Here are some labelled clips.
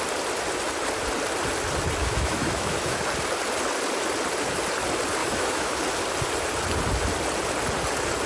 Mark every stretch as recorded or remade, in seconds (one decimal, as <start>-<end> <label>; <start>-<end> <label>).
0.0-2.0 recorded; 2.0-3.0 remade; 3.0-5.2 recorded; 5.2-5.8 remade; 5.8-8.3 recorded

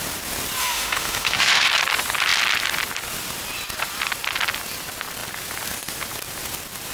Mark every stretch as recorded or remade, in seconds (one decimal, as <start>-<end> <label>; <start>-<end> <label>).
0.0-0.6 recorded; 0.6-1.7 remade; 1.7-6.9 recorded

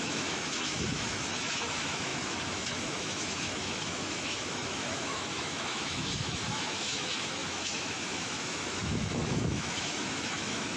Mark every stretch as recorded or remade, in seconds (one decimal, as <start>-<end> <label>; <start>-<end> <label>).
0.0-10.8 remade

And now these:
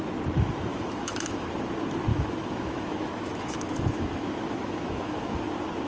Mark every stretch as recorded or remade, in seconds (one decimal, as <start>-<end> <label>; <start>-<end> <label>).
0.0-0.7 recorded; 0.7-1.5 remade; 1.5-2.1 recorded; 2.1-5.4 remade; 5.4-5.9 recorded

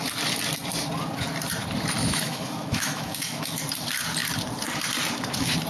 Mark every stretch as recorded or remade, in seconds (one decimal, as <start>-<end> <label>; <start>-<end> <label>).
0.0-2.0 recorded; 2.0-3.6 remade; 3.6-5.7 recorded